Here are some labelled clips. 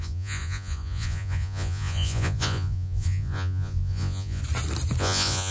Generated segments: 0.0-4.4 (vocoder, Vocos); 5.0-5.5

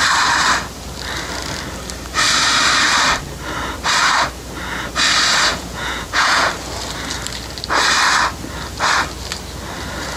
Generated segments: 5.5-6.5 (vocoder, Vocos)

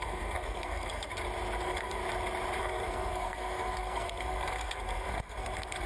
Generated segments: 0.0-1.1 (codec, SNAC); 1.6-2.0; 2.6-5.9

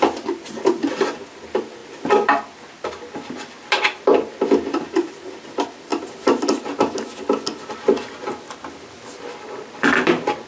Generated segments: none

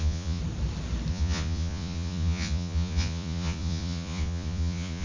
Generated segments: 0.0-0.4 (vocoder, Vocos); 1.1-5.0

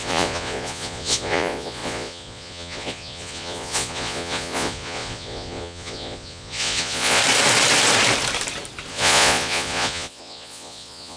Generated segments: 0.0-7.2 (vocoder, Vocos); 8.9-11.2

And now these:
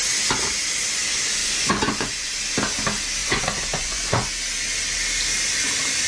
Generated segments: 1.4-2.4 (vocoder, Vocos); 3.2-4.3